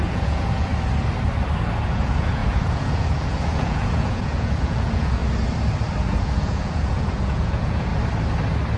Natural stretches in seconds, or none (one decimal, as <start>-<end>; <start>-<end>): 0.7-1.9; 5.2-6.0; 7.9-8.8